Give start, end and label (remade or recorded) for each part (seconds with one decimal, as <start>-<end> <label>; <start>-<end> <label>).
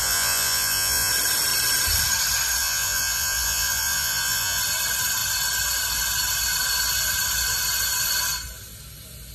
0.0-1.1 remade; 1.1-2.6 recorded; 2.6-4.6 remade; 4.6-9.3 recorded